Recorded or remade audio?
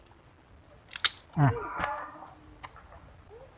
recorded